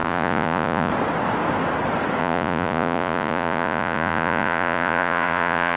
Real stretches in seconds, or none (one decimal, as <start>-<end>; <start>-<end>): 0.9-2.2